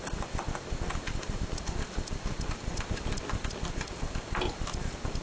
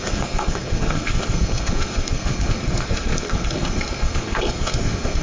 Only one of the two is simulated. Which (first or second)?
second